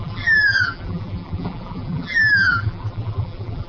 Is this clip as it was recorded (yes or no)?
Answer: no